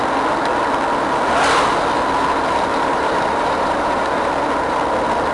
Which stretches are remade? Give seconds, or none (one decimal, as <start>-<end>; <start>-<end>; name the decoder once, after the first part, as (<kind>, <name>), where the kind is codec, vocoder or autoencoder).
2.7-4.3 (vocoder, BigVGAN v2)